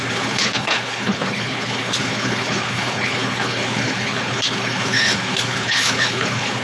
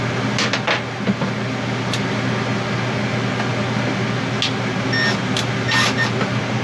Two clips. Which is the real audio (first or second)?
second